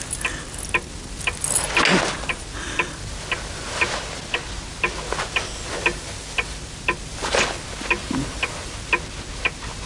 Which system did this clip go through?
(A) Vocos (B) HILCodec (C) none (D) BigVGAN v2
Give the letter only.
C